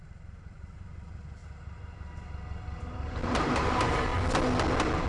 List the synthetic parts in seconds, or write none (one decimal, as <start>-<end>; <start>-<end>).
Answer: 0.0-1.4; 2.8-4.1